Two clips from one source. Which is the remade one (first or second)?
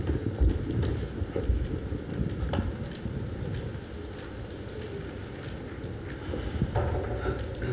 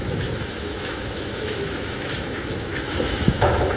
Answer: second